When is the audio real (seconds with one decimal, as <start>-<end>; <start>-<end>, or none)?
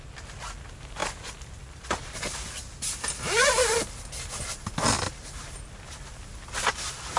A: 0.0-7.2